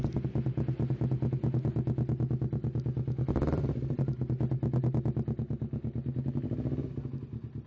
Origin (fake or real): real